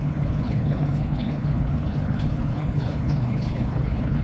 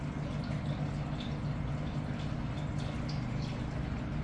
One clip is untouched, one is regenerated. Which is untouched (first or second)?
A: second